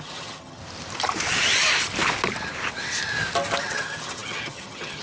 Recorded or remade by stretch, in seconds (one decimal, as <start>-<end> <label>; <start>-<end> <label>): 0.0-0.6 remade; 0.6-3.6 recorded; 3.6-5.0 remade